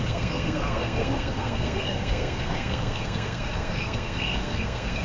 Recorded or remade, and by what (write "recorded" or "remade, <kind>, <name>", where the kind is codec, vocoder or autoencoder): remade, codec, SNAC